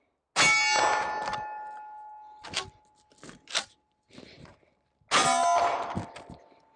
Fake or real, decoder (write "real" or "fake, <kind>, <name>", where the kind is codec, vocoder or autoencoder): real